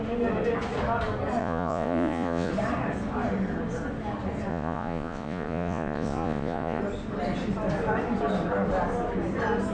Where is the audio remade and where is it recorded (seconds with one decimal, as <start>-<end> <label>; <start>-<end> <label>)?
0.0-1.4 recorded; 1.4-2.5 remade; 2.5-4.5 recorded; 4.5-6.8 remade; 6.8-9.7 recorded